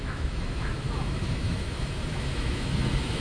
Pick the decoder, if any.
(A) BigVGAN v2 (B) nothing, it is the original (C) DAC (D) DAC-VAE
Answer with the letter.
D